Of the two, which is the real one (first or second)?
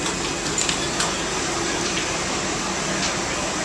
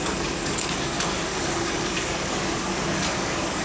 first